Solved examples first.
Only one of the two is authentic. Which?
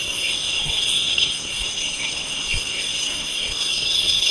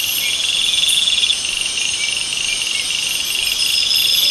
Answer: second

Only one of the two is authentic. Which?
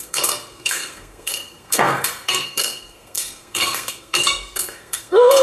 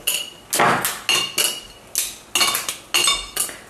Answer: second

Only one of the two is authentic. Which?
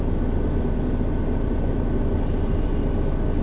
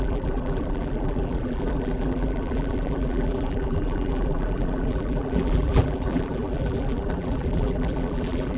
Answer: first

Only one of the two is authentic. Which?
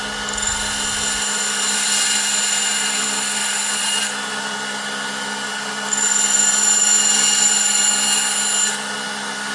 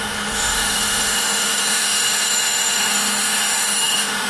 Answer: first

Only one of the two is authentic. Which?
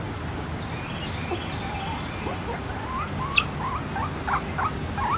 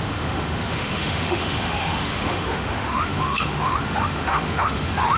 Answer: first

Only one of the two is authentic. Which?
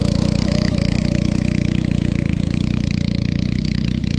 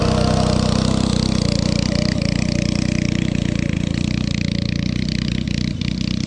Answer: second